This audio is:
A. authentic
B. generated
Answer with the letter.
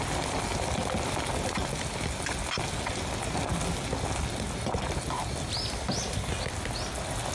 A